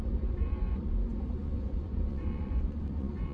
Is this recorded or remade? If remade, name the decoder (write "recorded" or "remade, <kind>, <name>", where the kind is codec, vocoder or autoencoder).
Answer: remade, vocoder, Vocos